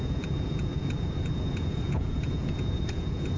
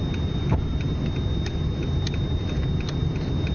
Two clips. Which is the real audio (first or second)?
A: second